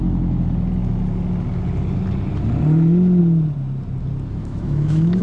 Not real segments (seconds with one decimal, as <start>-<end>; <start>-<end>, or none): 4.4-5.2